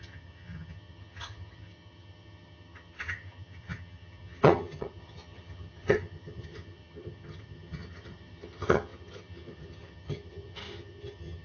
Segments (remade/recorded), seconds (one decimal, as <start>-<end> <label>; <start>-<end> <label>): 0.0-11.4 remade